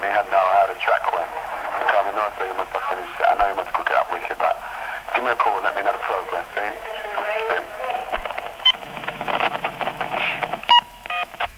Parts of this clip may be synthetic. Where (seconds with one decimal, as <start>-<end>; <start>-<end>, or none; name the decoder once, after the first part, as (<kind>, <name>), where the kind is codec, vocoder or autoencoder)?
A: 0.0-3.1 (autoencoder, DAC-VAE); 3.7-8.0; 8.6-11.6